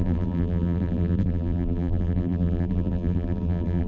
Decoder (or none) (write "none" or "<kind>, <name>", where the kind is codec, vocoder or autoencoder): vocoder, BigVGAN v2